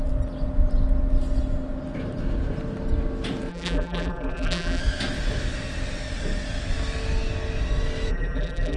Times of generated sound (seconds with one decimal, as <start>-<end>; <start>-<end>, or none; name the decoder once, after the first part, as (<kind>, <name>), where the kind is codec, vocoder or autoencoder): 3.5-4.8 (vocoder, BigVGAN v2); 8.1-8.8